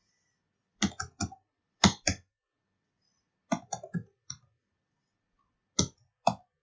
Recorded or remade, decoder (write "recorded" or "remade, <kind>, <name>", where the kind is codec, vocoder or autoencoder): recorded